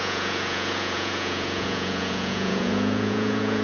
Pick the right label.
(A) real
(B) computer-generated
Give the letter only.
B